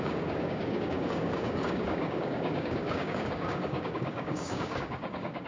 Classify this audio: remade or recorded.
remade